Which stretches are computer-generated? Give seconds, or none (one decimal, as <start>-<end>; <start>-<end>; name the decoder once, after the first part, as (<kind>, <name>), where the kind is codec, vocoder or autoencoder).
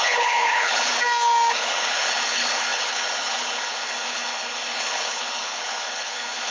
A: 0.0-0.9 (codec, HILCodec); 1.5-6.5